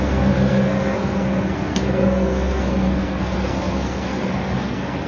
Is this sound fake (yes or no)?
yes